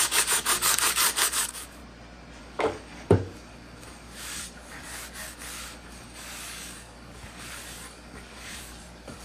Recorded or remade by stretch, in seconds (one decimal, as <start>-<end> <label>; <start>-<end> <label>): 0.0-1.8 remade; 1.8-2.4 recorded; 2.4-9.2 remade